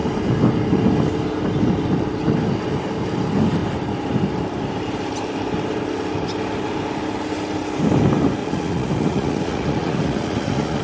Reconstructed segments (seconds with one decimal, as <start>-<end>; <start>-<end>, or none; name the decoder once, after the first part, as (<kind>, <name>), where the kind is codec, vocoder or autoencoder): 8.4-10.8 (vocoder, Vocos)